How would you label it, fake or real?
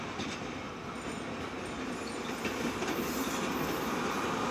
real